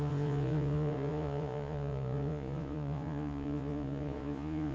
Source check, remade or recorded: remade